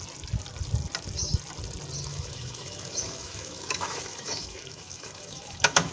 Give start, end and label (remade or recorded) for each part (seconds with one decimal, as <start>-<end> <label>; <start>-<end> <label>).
0.0-2.1 recorded; 2.1-5.9 remade